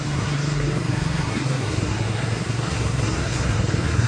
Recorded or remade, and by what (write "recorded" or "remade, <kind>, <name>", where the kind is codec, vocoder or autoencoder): remade, codec, SNAC